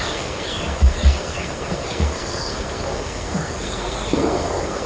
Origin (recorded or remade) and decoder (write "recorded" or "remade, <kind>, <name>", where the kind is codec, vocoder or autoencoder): remade, codec, SNAC